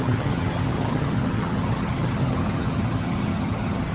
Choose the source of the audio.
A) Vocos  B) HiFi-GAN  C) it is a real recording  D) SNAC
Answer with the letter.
B